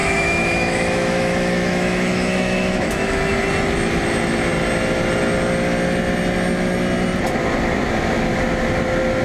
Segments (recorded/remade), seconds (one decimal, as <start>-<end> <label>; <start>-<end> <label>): 0.0-3.3 remade; 3.3-9.2 recorded